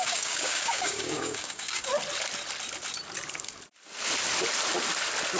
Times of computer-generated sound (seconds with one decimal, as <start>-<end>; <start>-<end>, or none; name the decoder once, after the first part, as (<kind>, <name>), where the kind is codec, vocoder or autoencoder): 0.0-1.9 (codec, DAC)